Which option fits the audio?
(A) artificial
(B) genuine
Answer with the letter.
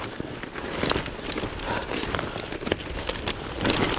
B